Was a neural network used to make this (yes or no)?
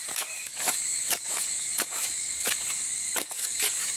yes